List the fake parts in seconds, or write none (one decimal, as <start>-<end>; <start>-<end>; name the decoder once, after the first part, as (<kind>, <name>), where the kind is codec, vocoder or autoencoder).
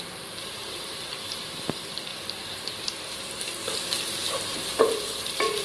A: 0.0-2.1 (vocoder, BigVGAN v2); 2.9-3.6; 4.8-5.6